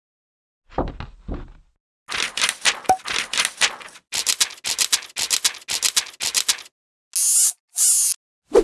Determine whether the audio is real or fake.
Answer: real